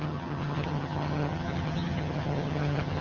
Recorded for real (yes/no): no